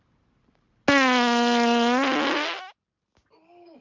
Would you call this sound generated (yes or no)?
no